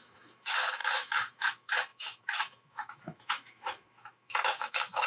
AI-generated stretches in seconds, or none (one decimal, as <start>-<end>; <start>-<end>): 0.0-5.1